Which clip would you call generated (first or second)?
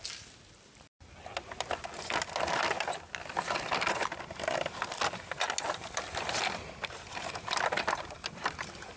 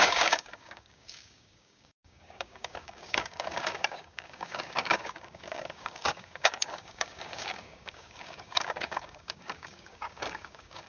second